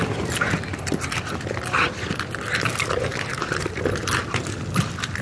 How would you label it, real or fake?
real